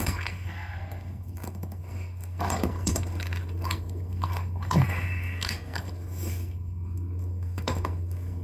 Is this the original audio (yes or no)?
no